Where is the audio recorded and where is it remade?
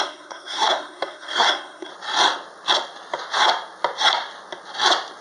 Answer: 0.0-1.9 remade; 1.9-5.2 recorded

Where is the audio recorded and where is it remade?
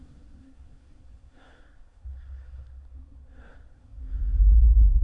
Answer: 0.0-4.0 remade; 4.0-4.6 recorded; 4.6-5.0 remade